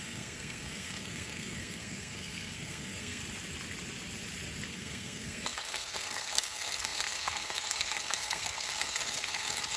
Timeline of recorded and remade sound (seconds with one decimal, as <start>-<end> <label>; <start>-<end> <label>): 0.0-3.2 remade; 3.2-4.7 recorded; 4.7-9.8 remade